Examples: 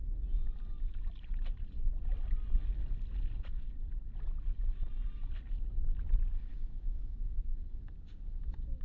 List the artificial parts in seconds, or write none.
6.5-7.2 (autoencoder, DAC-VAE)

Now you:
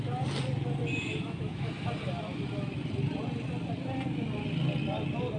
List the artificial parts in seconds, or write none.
0.8-1.7 (autoencoder, DAC-VAE)

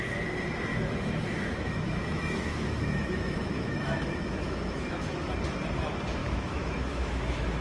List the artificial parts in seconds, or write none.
0.7-5.3 (autoencoder, DAC-VAE); 6.2-7.6

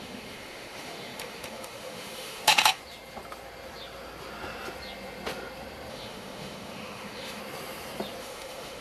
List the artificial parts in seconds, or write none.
0.0-2.8 (autoencoder, DAC-VAE); 5.9-7.4; 8.2-8.8

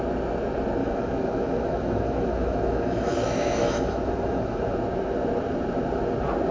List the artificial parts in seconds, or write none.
0.8-4.7 (autoencoder, DAC-VAE)

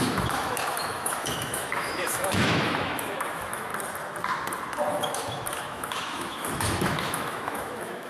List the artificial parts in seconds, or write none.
0.0-3.7 (autoencoder, DAC-VAE); 4.9-8.1

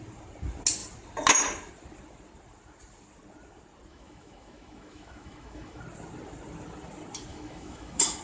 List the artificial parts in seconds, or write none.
3.9-5.8 (autoencoder, DAC-VAE); 7.3-8.2

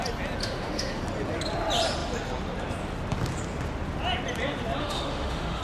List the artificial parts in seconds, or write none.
0.4-1.0 (autoencoder, DAC-VAE); 4.8-5.6